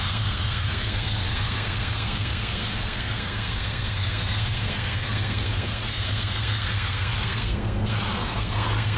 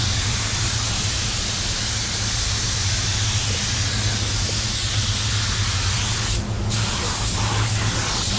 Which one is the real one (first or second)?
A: second